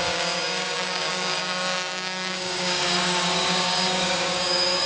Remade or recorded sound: remade